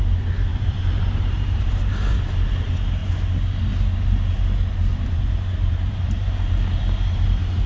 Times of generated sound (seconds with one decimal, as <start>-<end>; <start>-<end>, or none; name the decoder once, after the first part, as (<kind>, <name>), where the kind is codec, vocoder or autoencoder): 0.5-2.3 (vocoder, BigVGAN v2); 4.9-6.4